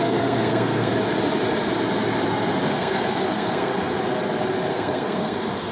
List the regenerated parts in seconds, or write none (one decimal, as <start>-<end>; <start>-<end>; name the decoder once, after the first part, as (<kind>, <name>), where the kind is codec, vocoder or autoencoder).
0.0-0.9 (codec, SNAC); 2.7-3.7; 4.7-5.7